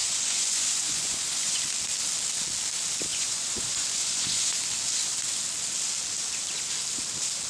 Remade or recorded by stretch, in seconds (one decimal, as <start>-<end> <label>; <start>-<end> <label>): 0.0-1.6 remade; 1.6-3.1 recorded; 3.1-4.6 remade; 4.6-7.5 recorded